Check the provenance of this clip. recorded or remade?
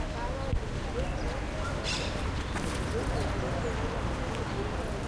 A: recorded